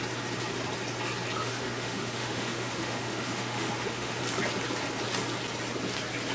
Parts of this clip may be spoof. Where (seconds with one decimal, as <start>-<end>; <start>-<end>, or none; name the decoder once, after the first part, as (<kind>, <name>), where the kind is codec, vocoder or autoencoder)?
1.4-4.2 (autoencoder, DAC-VAE)